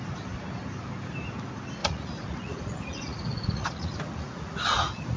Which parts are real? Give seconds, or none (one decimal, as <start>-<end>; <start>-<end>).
0.0-1.8